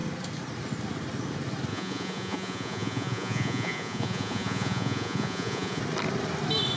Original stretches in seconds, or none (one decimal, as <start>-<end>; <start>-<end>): 0.0-1.7; 5.8-6.8